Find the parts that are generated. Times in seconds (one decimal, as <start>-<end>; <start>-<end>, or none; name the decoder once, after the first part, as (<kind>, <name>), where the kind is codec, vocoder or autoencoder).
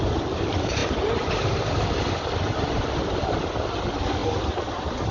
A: none